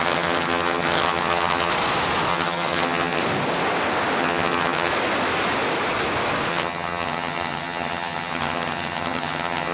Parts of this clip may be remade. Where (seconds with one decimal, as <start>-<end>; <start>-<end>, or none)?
0.0-1.7; 2.3-3.2; 4.2-4.9; 6.5-9.7